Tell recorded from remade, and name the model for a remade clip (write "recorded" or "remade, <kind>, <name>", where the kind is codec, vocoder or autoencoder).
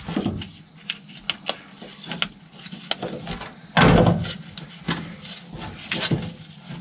recorded